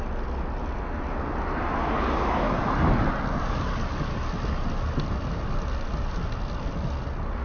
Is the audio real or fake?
real